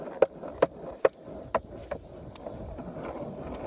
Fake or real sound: real